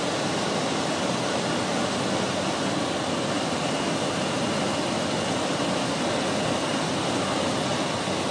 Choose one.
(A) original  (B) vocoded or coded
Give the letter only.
A